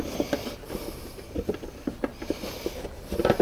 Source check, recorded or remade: recorded